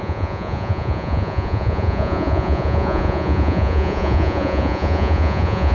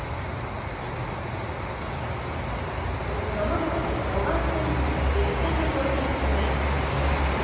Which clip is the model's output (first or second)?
first